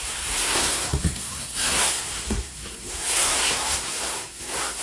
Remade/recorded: remade